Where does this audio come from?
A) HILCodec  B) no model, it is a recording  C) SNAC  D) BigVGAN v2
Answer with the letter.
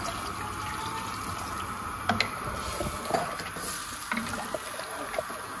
B